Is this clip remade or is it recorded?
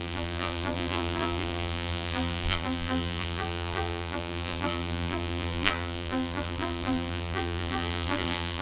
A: remade